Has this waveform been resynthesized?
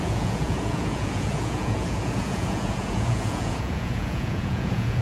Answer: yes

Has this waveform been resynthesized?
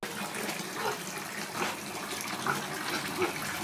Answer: no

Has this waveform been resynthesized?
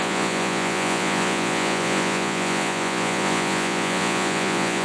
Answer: yes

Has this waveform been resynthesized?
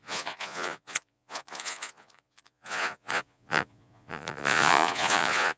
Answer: yes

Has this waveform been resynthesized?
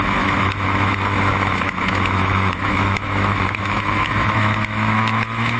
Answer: yes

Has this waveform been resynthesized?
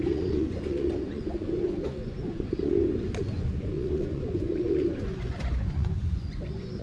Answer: yes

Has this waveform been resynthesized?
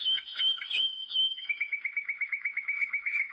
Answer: yes